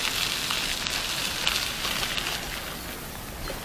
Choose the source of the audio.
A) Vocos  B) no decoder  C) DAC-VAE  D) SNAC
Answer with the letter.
B